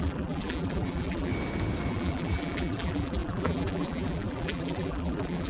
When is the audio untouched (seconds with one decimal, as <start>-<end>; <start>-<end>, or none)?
1.3-1.9